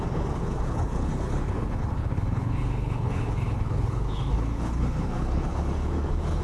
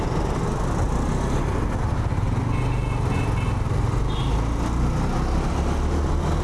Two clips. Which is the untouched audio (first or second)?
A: second